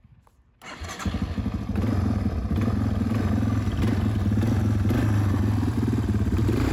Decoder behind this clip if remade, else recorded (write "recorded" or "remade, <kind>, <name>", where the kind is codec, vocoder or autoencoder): recorded